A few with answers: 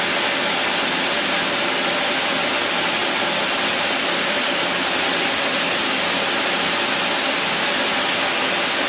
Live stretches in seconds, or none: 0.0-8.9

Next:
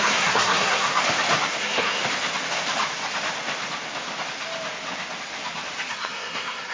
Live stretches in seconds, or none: 0.9-1.6; 2.0-5.9